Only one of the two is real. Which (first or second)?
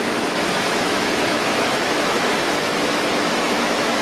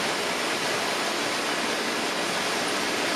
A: second